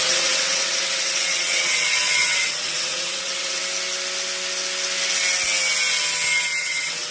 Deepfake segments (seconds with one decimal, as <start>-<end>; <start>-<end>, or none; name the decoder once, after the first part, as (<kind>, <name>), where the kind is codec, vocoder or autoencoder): 0.0-3.6 (vocoder, WaveNeXt); 6.6-7.1